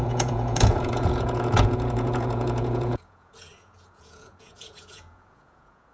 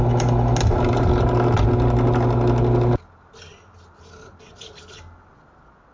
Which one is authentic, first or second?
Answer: second